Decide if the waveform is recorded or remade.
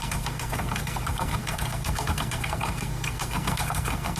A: remade